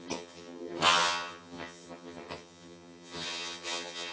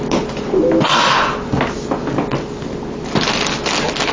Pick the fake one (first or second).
first